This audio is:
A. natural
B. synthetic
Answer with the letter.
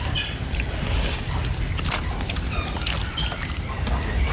A